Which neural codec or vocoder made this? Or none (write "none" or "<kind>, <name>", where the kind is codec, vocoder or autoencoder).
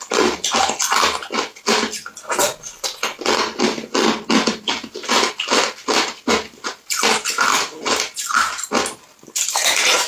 none